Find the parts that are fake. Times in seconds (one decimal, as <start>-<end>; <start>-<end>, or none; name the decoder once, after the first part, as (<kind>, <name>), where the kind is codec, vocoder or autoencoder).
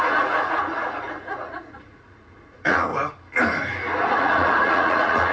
0.0-2.9 (vocoder, Vocos); 4.2-5.3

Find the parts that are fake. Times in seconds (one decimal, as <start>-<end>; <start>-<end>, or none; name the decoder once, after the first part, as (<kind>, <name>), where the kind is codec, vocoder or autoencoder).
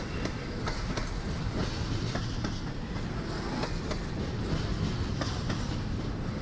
none